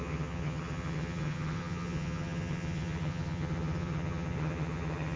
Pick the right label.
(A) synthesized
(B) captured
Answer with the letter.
A